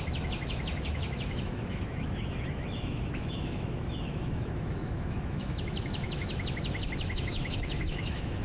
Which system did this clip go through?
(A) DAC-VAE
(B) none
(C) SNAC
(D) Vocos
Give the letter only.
A